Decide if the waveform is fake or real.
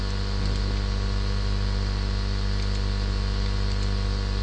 real